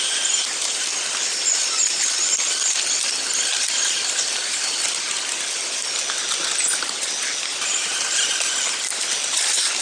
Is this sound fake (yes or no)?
no